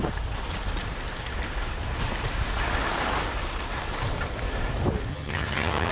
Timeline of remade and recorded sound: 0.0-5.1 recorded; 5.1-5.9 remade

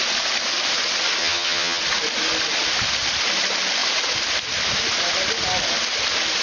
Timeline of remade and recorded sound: 0.0-1.2 recorded; 1.2-1.8 remade; 1.8-6.4 recorded

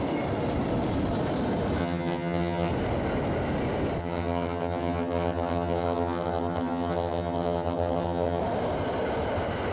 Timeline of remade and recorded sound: 0.0-1.8 recorded; 1.8-2.7 remade; 2.7-4.0 recorded; 4.0-8.4 remade; 8.4-9.7 recorded

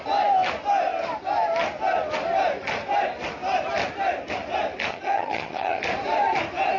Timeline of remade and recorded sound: 0.0-4.9 recorded; 4.9-5.8 remade; 5.8-6.8 recorded

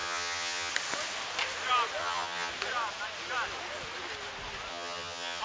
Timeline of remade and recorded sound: 0.0-0.7 remade; 0.7-2.0 recorded; 2.0-2.5 remade; 2.5-4.7 recorded; 4.7-5.4 remade

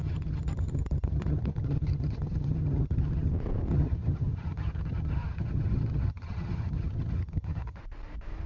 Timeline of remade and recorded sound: 0.0-3.3 remade; 3.3-3.7 recorded; 3.7-7.8 remade; 7.8-8.5 recorded

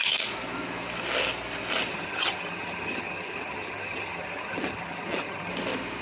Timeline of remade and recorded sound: 0.0-1.9 recorded; 1.9-5.5 remade; 5.5-6.0 recorded